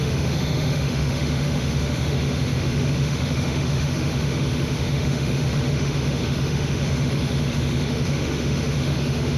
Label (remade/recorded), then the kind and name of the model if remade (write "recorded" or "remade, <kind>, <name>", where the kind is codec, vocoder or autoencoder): remade, autoencoder, DAC-VAE